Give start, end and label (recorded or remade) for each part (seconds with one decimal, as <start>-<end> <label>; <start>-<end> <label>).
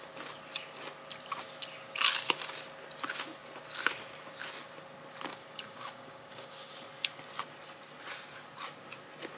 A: 0.0-5.3 recorded; 5.3-6.7 remade; 6.7-9.4 recorded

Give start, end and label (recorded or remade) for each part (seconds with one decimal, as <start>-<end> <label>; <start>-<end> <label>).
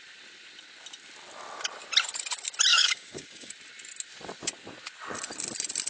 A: 0.0-2.7 recorded; 2.7-3.5 remade; 3.5-5.9 recorded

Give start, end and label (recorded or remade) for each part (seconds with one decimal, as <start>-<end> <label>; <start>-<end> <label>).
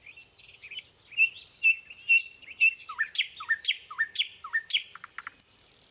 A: 0.0-5.9 recorded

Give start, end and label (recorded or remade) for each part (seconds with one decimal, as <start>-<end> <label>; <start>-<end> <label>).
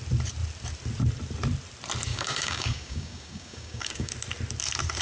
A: 0.0-2.1 recorded; 2.1-4.1 remade; 4.1-5.0 recorded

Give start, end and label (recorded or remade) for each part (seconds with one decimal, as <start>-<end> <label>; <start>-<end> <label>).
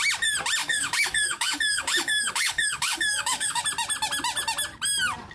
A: 0.0-0.6 recorded; 0.6-3.6 remade; 3.6-5.3 recorded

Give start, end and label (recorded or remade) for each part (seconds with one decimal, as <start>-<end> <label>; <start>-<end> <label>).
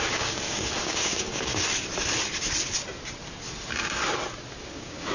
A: 0.0-1.5 remade; 1.5-4.6 recorded; 4.6-5.1 remade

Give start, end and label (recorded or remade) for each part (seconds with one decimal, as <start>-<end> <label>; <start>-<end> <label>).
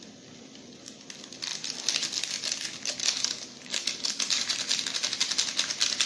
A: 0.0-3.0 recorded; 3.0-4.4 remade; 4.4-6.1 recorded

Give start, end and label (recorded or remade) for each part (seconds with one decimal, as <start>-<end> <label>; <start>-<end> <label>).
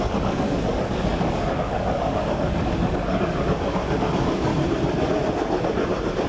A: 0.0-4.5 remade; 4.5-6.3 recorded